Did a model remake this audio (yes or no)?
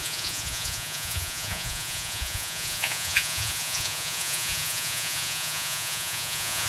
yes